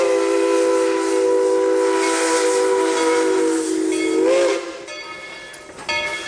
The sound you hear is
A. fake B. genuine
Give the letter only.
B